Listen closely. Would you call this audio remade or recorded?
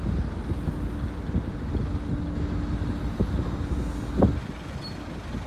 recorded